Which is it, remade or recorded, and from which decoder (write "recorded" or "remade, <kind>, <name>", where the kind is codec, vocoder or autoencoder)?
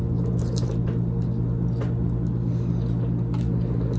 recorded